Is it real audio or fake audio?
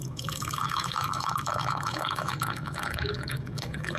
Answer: fake